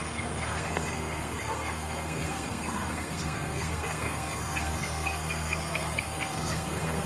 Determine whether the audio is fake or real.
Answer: fake